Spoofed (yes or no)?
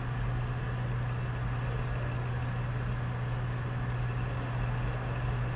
no